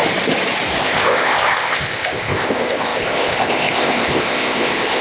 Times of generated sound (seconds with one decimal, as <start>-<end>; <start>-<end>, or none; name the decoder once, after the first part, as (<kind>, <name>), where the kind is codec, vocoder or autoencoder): 0.8-5.0 (codec, ZipCodec)